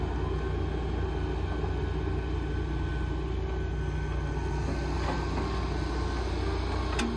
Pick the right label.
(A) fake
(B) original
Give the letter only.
B